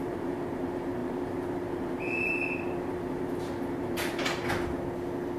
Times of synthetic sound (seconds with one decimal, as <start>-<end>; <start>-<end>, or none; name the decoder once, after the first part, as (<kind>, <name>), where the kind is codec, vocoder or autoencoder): 0.0-4.4 (vocoder, BigVGAN v2)